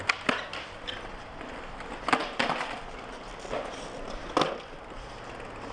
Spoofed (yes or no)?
no